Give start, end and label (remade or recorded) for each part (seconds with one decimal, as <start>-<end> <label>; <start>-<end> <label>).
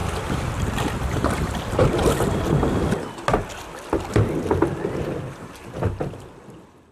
0.0-0.5 recorded; 0.5-2.0 remade; 2.0-5.4 recorded; 5.4-6.9 remade